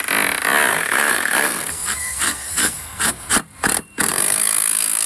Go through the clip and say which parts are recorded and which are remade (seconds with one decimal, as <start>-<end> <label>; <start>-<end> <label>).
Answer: 0.0-0.7 recorded; 0.7-3.3 remade; 3.3-4.1 recorded; 4.1-5.1 remade